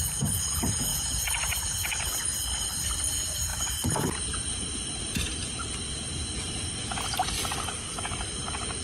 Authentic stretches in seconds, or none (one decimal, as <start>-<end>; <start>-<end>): 0.0-0.9; 2.2-3.5; 6.8-8.8